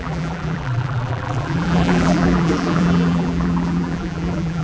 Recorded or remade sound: remade